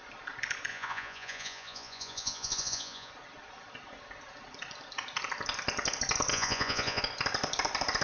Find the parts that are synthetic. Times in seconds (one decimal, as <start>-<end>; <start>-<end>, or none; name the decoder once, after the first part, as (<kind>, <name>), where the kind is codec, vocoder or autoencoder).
0.7-3.1 (vocoder, Vocos); 6.3-7.0